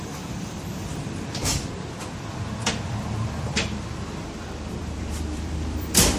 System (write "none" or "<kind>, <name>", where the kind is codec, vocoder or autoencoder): vocoder, BigVGAN v2